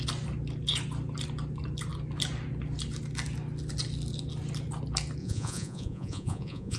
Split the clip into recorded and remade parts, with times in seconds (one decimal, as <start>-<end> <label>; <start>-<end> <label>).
0.0-5.2 recorded; 5.2-6.8 remade